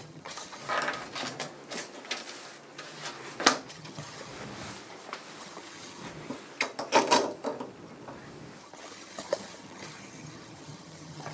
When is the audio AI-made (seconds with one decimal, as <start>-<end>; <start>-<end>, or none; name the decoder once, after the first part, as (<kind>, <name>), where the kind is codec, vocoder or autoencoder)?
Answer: 0.0-0.6 (vocoder, HiFi-GAN); 3.7-4.3; 5.4-6.0; 8.6-11.3